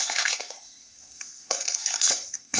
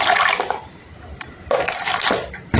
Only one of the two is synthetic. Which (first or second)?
first